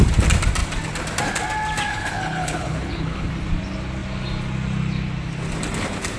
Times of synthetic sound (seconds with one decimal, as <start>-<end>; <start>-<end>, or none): 1.9-3.3